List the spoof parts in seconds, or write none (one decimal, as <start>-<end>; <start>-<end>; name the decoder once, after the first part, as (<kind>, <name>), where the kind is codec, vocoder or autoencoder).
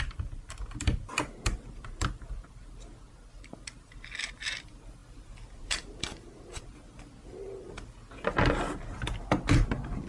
none